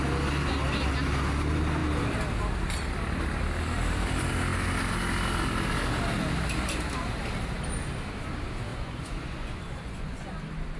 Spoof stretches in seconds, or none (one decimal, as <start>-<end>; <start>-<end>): 8.7-10.3